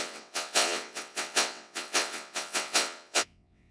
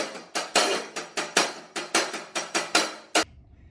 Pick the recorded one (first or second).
second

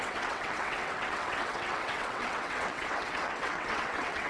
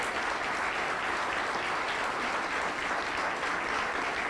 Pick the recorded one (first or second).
second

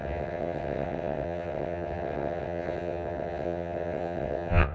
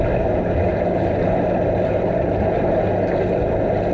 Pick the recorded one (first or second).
second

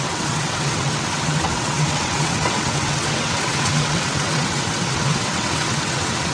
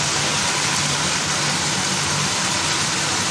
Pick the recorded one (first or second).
second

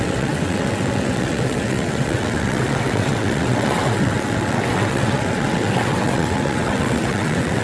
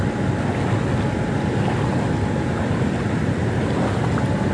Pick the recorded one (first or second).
second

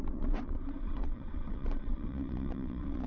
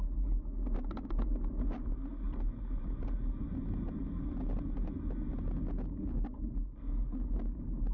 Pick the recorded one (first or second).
second